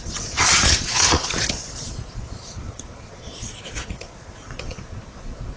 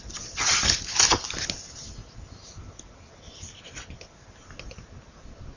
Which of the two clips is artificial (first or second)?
first